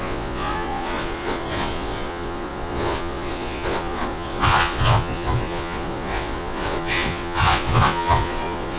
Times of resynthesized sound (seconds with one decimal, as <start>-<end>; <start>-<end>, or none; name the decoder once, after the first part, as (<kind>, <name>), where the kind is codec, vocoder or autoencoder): 0.0-8.8 (vocoder, Vocos)